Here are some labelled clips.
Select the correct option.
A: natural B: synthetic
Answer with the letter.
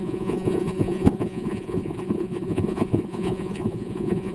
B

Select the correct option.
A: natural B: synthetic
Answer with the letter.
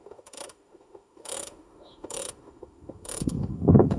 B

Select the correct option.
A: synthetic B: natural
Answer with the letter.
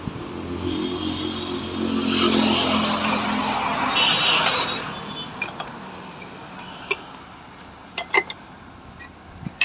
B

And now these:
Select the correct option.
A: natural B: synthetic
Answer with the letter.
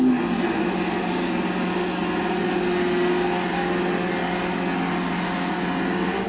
A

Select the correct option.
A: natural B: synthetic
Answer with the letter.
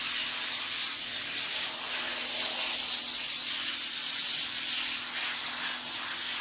A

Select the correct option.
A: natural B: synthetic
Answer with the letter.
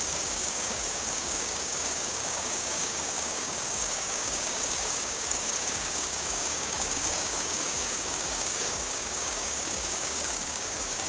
B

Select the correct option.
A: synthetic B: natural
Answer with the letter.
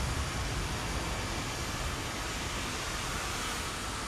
B